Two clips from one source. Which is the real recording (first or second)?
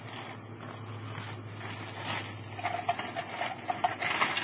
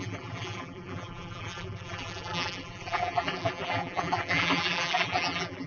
first